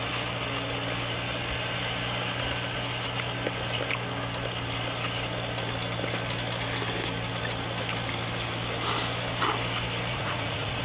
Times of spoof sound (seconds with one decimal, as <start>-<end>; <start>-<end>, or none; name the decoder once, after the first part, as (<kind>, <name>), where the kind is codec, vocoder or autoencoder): 10.1-10.8 (vocoder, Vocos)